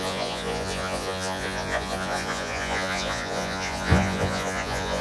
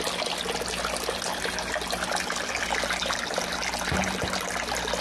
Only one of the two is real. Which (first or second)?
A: second